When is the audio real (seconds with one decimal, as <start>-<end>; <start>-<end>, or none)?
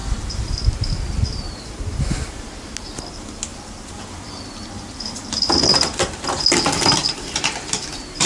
1.8-3.5; 6.4-7.0